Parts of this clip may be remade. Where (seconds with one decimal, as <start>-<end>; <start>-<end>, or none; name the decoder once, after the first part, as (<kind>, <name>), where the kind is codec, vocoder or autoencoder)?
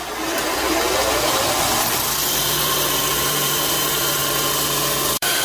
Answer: 3.2-4.2 (vocoder, BigVGAN v2); 5.0-5.4